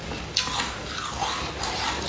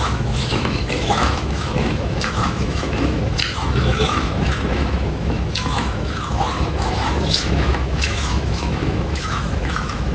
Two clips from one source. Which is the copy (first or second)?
second